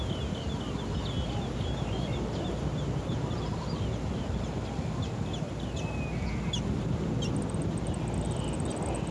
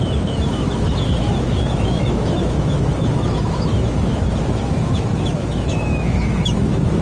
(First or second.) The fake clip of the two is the second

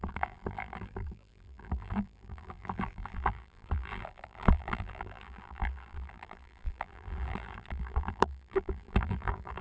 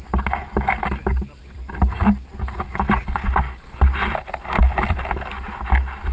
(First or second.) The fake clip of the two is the first